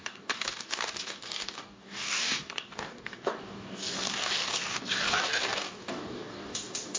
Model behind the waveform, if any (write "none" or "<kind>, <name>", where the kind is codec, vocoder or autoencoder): codec, DAC